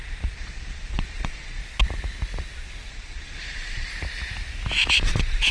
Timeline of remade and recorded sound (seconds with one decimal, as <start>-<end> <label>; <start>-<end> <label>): 0.0-1.6 remade; 1.6-2.9 recorded; 2.9-3.9 remade; 3.9-5.0 recorded; 5.0-5.5 remade